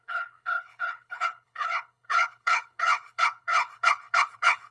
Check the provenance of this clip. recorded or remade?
remade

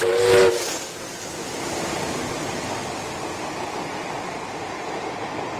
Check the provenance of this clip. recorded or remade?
recorded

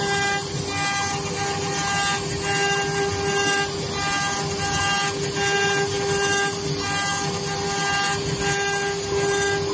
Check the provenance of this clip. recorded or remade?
recorded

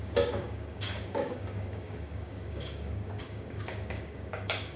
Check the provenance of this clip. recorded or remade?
remade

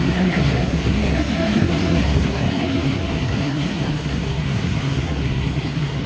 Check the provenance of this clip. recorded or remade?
remade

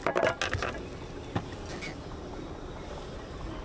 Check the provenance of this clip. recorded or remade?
recorded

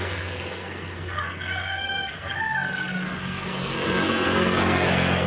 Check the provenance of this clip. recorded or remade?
remade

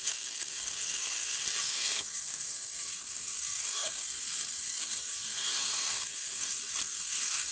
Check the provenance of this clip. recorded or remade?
remade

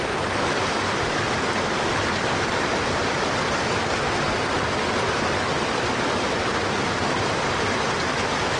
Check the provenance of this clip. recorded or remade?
recorded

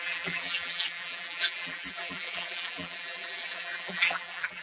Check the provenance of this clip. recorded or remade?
remade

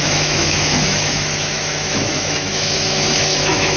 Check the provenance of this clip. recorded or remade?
remade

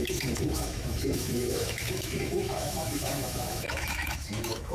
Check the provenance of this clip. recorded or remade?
remade